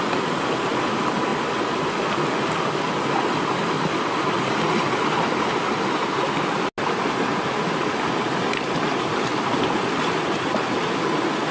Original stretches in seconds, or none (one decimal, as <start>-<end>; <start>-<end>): 0.0-11.5

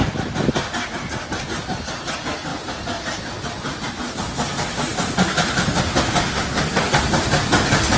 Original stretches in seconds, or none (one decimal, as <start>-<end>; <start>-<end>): 0.0-6.3; 6.8-8.0

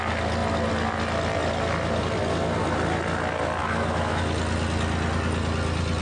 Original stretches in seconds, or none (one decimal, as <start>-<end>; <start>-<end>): 0.0-3.6; 4.2-6.0

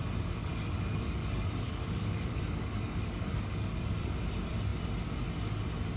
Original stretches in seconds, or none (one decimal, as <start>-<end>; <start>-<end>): 0.0-0.4; 4.0-6.0

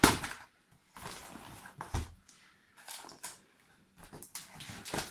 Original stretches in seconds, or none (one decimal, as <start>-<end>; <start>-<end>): 0.0-2.6; 3.7-5.1

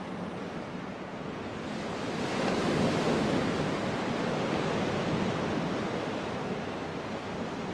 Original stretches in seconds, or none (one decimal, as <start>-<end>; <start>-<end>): 0.0-0.9; 1.4-7.7